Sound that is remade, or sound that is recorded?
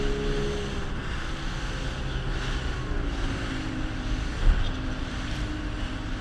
recorded